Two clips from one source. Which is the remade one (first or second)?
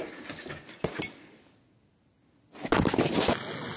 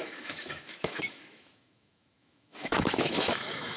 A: second